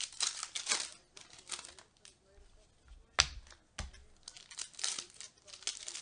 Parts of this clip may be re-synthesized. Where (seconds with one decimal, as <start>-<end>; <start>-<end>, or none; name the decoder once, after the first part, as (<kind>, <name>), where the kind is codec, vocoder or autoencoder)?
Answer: none